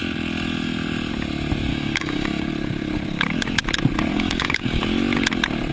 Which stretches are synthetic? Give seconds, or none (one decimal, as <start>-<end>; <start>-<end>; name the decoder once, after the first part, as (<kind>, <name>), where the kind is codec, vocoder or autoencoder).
1.7-2.5 (codec, DAC); 4.1-4.8